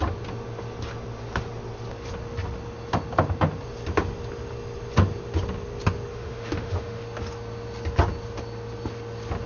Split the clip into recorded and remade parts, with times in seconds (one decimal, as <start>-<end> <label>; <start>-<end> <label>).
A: 0.0-6.1 recorded; 6.1-7.0 remade; 7.0-9.5 recorded